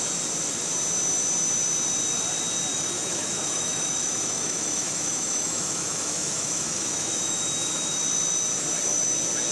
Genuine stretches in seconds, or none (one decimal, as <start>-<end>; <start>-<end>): 0.0-2.7; 8.0-9.5